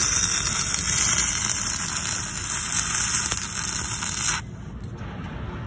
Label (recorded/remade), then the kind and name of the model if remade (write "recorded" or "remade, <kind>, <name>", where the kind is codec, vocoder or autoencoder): recorded